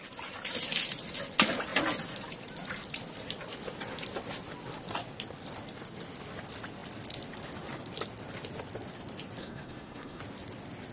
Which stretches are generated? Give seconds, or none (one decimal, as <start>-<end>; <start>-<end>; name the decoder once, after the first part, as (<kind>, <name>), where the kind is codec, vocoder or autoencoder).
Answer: 9.4-10.2 (codec, SNAC)